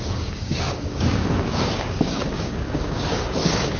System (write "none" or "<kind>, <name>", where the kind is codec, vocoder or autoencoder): codec, DAC